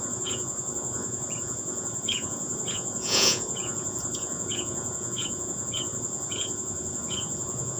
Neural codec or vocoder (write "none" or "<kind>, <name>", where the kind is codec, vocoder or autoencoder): vocoder, Vocos